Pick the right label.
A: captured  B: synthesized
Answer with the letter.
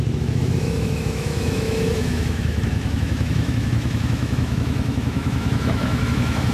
B